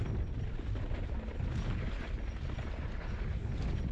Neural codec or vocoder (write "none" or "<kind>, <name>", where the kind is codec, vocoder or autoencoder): none